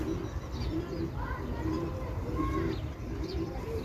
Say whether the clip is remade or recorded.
recorded